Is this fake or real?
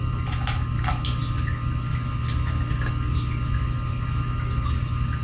real